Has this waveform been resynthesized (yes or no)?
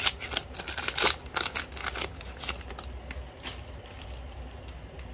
no